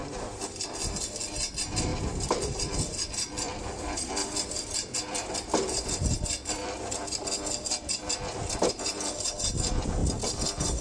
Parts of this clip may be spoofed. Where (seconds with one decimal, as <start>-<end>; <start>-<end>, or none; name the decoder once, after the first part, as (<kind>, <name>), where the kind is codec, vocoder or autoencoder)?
0.0-0.8 (vocoder, BigVGAN v2); 1.5-6.6; 8.7-10.8